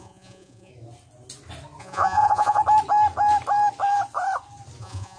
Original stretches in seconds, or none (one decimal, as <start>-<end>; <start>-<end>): 0.7-1.8; 2.6-4.8